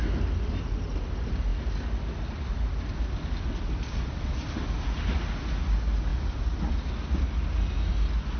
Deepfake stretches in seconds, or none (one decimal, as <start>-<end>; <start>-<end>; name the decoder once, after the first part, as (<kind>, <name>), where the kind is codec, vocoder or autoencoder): none